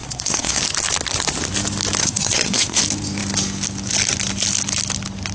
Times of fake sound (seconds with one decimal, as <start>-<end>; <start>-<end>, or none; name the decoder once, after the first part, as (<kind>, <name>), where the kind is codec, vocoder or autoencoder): 0.0-0.6 (codec, SNAC); 2.0-2.8